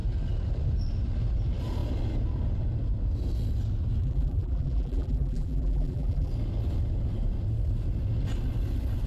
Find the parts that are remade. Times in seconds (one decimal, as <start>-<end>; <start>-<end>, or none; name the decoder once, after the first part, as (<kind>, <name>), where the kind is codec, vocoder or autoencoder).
4.0-6.3 (vocoder, BigVGAN v2)